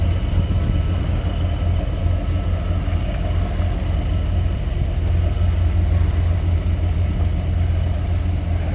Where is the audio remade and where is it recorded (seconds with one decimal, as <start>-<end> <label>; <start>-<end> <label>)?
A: 0.0-8.7 recorded